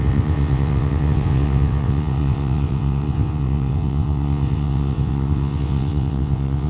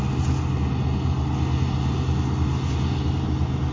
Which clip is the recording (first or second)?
second